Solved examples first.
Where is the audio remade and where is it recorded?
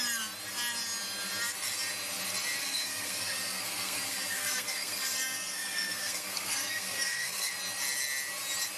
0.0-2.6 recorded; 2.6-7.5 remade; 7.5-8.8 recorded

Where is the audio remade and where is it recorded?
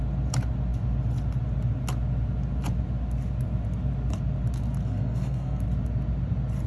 0.0-4.8 recorded; 4.8-5.6 remade; 5.6-6.7 recorded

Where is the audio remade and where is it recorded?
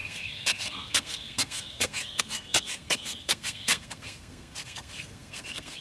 0.0-5.8 remade